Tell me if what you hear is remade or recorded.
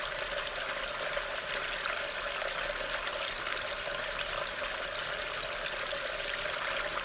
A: recorded